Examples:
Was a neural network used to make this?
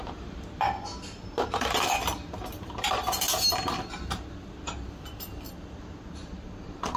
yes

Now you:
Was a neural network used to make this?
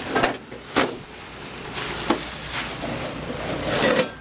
no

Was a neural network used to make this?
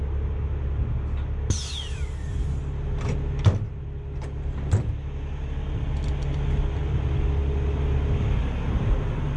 no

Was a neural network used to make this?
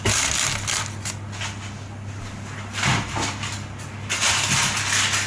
no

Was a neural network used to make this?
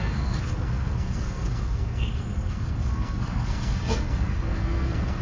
yes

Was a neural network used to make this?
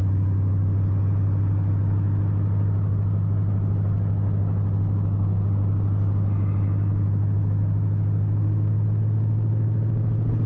no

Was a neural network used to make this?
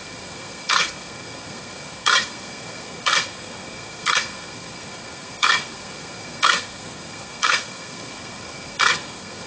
yes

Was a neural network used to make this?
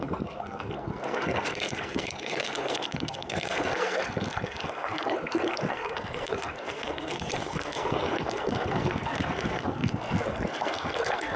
yes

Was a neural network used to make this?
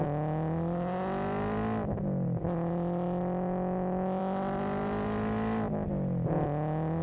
no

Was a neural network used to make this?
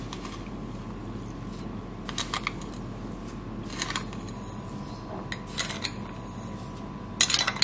no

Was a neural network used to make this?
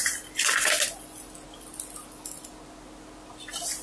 no